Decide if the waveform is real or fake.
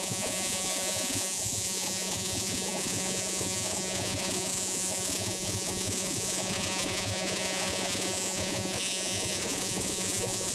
fake